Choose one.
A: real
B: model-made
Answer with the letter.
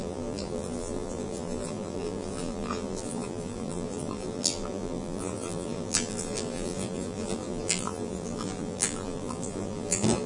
B